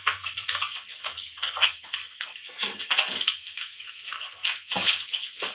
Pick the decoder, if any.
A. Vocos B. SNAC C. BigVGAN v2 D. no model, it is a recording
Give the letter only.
B